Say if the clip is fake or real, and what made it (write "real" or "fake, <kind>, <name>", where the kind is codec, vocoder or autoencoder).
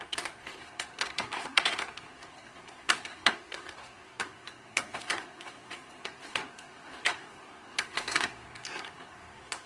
fake, codec, SNAC